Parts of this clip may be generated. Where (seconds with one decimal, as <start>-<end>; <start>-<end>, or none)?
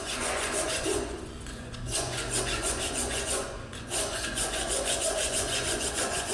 0.0-6.3